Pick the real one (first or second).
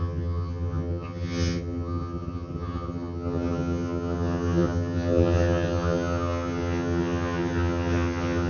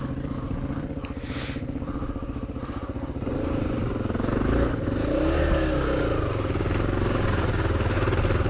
second